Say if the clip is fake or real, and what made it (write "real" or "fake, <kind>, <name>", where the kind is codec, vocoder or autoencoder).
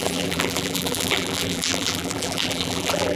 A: fake, vocoder, BigVGAN v2